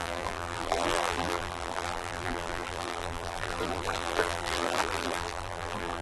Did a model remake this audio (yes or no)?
yes